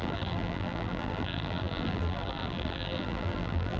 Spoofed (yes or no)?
yes